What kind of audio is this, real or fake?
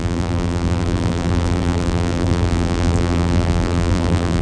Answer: fake